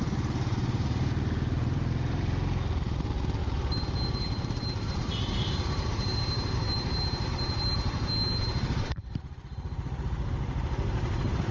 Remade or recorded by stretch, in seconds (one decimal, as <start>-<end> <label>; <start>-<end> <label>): 0.0-3.4 remade; 3.4-4.1 recorded; 4.1-11.5 remade